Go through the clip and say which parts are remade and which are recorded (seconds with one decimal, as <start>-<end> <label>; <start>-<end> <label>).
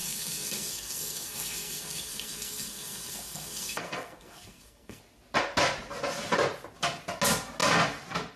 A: 0.0-5.0 remade; 5.0-8.4 recorded